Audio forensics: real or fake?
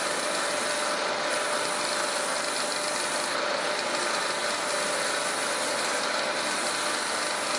real